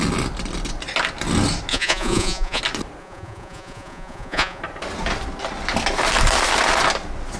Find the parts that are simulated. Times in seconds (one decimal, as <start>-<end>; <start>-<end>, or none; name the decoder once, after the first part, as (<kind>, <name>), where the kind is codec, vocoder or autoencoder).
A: 1.7-2.6 (vocoder, Vocos); 3.0-4.6